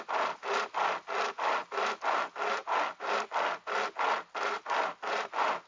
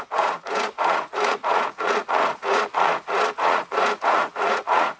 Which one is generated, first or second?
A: second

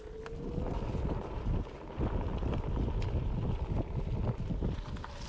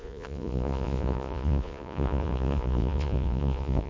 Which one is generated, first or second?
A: second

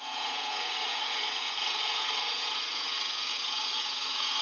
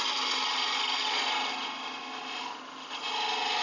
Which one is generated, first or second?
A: first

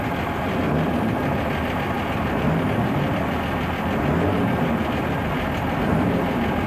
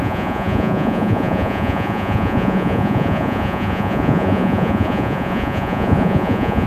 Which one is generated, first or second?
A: second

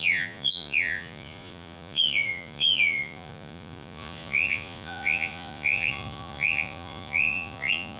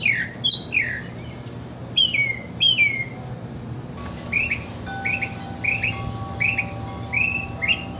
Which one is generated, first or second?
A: first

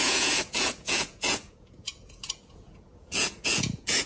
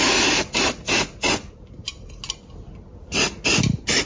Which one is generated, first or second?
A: first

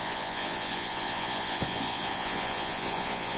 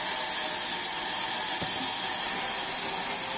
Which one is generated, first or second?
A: first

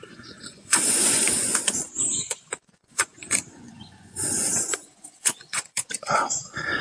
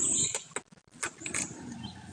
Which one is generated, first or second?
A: first